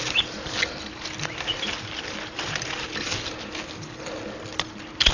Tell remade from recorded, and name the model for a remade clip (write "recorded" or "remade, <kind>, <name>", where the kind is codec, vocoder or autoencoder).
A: recorded